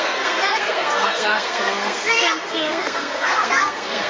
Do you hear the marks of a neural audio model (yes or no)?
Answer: yes